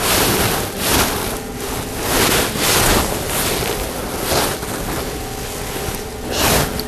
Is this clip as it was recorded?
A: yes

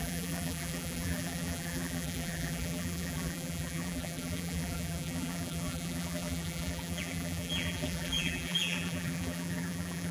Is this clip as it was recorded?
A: no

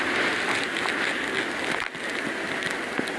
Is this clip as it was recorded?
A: yes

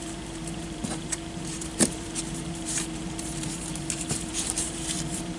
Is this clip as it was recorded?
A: no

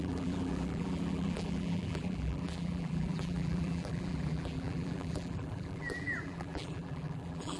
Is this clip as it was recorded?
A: no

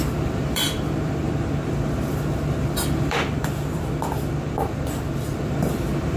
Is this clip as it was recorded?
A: no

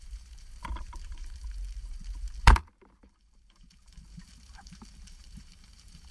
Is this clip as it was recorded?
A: no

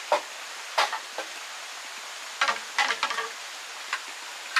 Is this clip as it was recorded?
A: yes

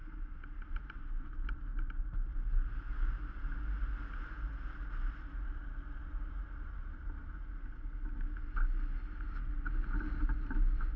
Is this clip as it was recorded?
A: yes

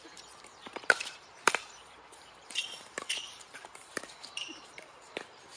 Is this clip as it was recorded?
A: no